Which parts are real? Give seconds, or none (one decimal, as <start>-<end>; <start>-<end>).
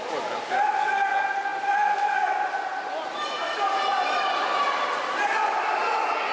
0.0-6.3